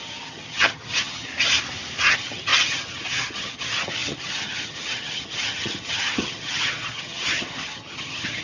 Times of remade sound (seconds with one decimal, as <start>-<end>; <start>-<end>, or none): 0.0-1.3; 2.0-8.4